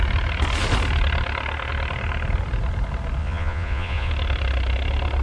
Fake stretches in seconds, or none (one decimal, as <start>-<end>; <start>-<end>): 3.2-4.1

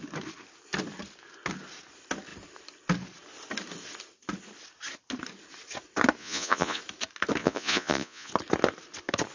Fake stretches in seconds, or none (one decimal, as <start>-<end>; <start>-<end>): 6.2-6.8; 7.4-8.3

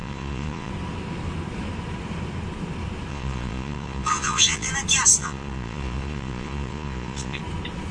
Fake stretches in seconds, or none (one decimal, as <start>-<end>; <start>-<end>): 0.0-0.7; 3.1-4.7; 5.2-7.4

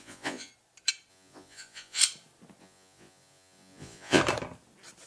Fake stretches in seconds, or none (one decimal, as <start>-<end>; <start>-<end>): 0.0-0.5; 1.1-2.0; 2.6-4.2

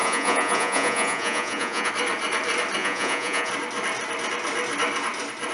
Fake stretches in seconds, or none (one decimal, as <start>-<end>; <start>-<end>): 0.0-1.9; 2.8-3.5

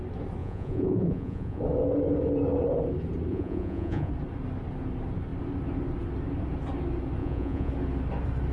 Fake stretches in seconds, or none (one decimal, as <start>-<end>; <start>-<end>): 0.4-1.6; 3.3-4.1; 7.2-7.7

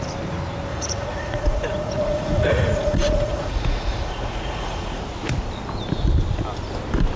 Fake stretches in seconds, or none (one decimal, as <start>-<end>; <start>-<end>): 0.7-5.0